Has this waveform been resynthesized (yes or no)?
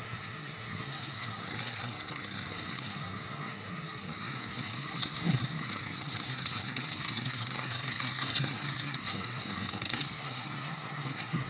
yes